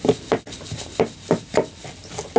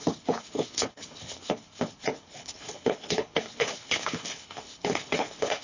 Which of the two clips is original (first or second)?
first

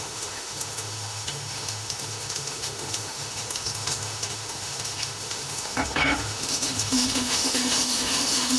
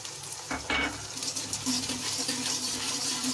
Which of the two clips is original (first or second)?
second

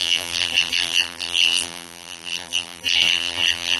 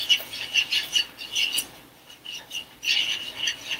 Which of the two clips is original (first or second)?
second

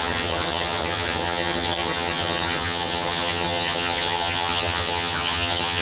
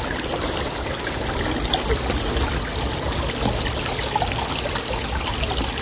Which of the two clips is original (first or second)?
second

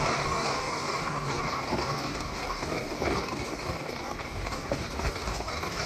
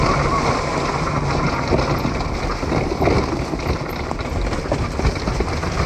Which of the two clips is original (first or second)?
second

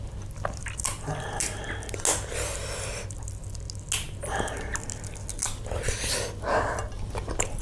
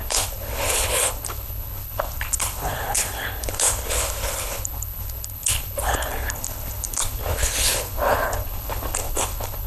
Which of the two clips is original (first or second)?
first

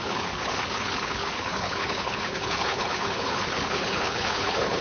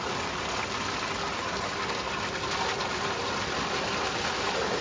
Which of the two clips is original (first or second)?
second